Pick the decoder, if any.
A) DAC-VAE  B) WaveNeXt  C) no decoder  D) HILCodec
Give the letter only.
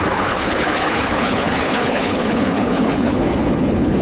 D